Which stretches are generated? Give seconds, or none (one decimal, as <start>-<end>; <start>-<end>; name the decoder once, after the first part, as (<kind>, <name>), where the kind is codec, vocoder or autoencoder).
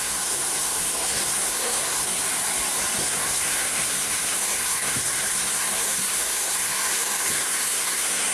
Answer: 0.0-2.2 (codec, SNAC); 3.0-8.3